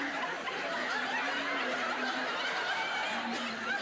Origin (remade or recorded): recorded